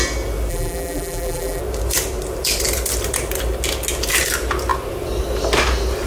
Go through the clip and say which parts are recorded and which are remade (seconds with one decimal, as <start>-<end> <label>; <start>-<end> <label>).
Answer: 0.0-0.5 recorded; 0.5-1.6 remade; 1.6-6.1 recorded